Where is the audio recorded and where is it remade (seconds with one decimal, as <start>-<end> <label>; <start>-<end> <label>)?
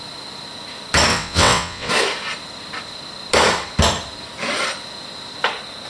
0.0-1.1 recorded; 1.1-1.9 remade; 1.9-5.9 recorded